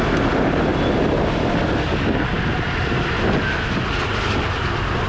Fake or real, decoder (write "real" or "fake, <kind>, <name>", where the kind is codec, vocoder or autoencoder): real